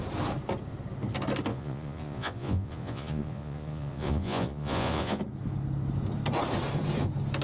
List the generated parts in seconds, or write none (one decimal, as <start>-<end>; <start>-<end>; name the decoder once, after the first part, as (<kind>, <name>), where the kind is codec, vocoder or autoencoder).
1.5-5.2 (vocoder, Vocos)